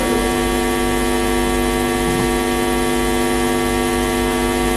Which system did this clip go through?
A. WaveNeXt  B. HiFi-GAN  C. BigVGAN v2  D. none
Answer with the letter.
D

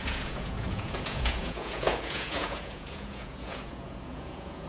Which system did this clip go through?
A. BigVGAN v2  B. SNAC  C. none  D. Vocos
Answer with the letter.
D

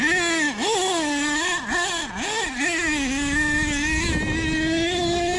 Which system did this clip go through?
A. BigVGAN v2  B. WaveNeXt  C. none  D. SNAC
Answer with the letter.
C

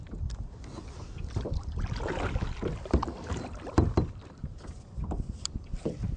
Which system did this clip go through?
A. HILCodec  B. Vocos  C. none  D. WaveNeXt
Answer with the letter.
C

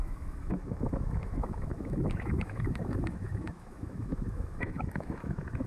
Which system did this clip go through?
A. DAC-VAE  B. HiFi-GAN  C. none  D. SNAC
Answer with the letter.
A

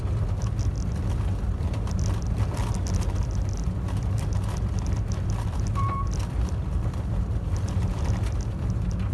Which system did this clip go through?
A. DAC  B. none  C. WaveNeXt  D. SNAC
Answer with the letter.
B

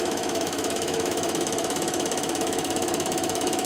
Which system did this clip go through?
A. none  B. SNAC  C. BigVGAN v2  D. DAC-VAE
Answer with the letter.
D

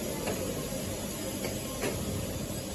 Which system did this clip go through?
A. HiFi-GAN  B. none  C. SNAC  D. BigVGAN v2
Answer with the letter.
B